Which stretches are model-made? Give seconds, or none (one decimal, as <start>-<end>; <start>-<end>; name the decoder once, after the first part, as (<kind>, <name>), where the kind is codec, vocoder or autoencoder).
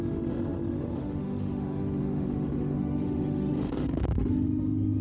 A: 0.0-5.0 (autoencoder, DAC-VAE)